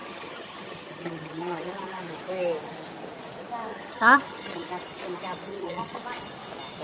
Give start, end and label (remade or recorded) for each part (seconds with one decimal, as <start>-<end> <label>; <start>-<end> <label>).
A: 0.0-2.0 remade; 2.0-3.7 recorded; 3.7-4.7 remade; 4.7-5.5 recorded; 5.5-6.0 remade; 6.0-6.8 recorded